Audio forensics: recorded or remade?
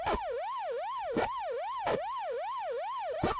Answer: remade